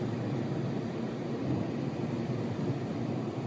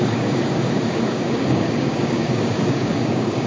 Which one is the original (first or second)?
first